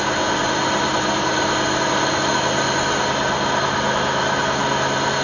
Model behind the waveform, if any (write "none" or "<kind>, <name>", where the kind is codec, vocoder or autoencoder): none